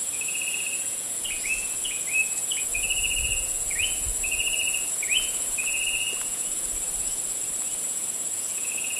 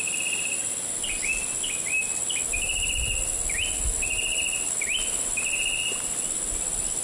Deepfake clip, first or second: first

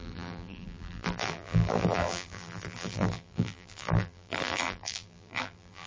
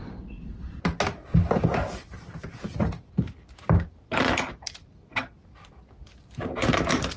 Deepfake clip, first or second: first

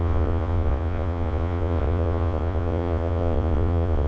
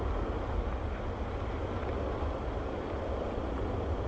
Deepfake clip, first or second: first